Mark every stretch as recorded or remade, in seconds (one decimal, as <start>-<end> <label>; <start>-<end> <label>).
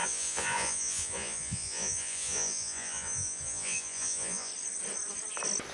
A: 0.0-4.5 remade; 4.5-5.7 recorded